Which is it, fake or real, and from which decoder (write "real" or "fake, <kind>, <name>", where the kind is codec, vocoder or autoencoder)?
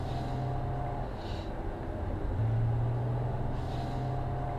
real